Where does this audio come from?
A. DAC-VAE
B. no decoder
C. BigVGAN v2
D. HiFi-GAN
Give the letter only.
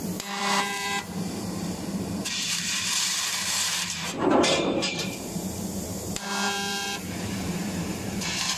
C